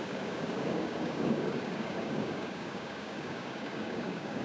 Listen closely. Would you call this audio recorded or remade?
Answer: remade